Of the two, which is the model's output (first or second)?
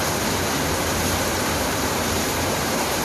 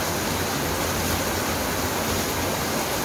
first